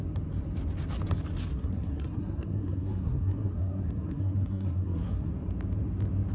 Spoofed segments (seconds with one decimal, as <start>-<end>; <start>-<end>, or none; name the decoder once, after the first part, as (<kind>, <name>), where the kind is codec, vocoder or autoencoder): 1.5-5.3 (codec, SNAC)